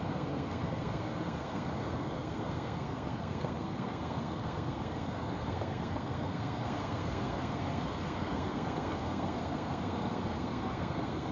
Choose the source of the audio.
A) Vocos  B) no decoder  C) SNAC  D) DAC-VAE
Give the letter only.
C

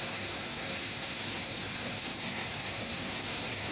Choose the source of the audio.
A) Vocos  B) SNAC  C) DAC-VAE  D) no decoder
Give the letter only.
B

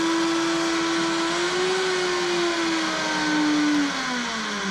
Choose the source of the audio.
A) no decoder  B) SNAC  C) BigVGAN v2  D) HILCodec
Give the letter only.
A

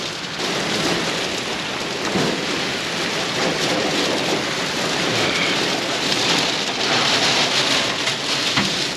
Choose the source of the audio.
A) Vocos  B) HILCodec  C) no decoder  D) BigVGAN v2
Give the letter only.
C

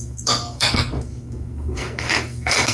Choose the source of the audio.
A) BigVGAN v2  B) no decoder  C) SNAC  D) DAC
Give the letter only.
C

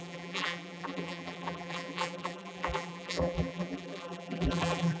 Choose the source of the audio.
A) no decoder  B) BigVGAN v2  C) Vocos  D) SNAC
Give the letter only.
B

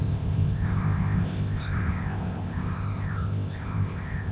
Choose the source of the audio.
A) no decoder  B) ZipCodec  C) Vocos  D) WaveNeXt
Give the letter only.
B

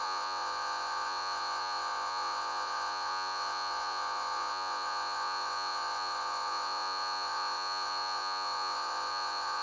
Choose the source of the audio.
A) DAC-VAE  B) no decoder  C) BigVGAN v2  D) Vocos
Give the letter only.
D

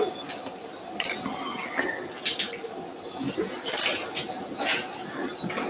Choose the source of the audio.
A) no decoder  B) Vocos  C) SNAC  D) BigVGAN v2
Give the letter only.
A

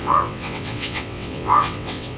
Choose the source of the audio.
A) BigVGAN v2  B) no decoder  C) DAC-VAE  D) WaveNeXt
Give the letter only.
D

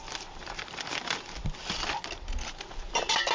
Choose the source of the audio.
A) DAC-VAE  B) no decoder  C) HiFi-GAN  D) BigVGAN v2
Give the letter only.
B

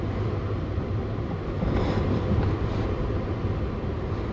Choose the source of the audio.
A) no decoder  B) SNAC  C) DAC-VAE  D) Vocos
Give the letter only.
A